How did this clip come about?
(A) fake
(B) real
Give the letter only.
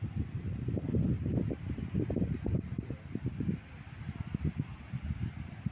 B